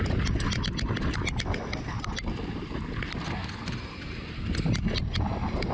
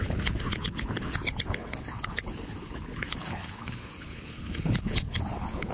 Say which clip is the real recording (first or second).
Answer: first